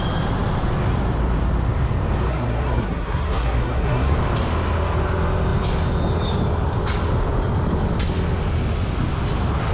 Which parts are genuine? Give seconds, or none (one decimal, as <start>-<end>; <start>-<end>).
0.0-2.3; 4.2-9.7